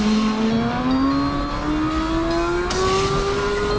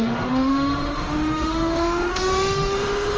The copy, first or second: second